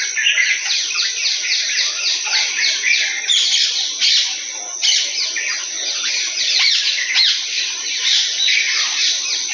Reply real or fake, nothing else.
real